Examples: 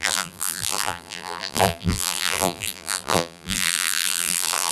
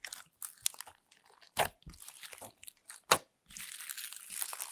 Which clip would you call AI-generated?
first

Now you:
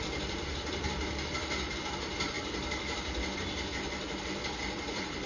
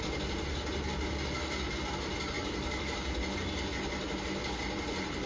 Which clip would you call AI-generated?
first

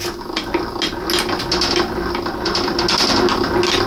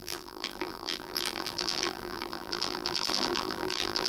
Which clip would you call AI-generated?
second